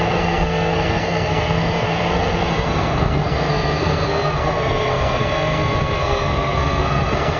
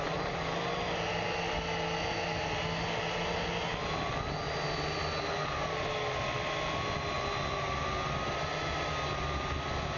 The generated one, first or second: first